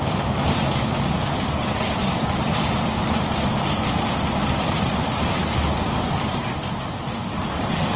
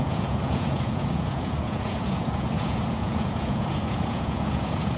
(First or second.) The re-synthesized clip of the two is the second